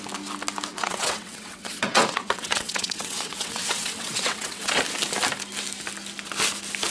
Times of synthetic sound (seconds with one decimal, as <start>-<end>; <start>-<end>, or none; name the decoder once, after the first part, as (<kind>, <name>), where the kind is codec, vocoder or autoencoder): 0.7-4.8 (vocoder, WaveNeXt)